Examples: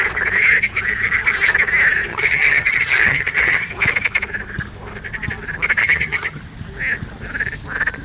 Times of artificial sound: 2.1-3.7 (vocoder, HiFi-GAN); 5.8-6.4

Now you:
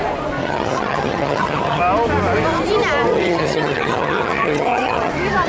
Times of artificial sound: 0.4-1.8 (vocoder, HiFi-GAN); 3.1-5.1

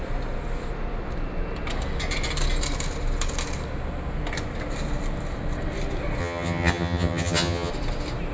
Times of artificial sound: 6.2-7.7 (vocoder, HiFi-GAN)

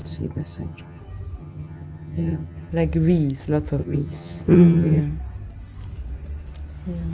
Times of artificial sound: 0.0-1.0 (vocoder, HiFi-GAN); 1.4-2.7; 3.8-5.0